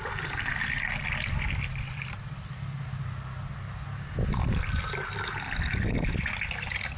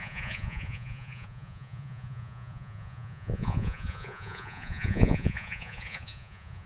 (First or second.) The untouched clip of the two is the first